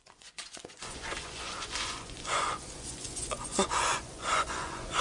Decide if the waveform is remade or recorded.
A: remade